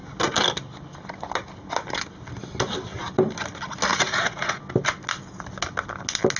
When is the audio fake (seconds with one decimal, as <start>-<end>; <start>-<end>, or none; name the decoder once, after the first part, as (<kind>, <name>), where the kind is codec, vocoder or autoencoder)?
3.9-4.6 (vocoder, Vocos)